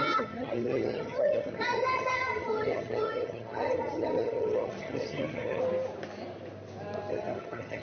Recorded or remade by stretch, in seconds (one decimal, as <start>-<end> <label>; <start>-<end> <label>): 0.0-5.6 remade; 5.6-7.1 recorded; 7.1-7.8 remade